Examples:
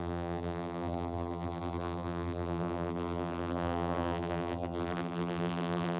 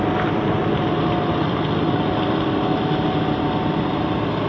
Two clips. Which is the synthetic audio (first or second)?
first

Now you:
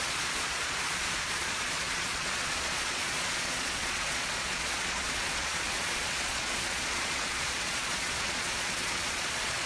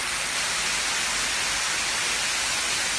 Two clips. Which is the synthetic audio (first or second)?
first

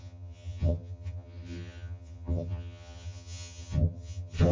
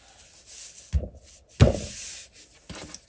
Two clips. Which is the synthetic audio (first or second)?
first